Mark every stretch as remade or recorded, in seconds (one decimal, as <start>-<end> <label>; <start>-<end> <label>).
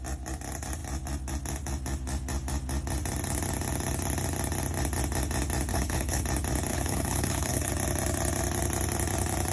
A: 0.0-5.7 recorded; 5.7-6.2 remade; 6.2-6.7 recorded; 6.7-7.7 remade; 7.7-9.5 recorded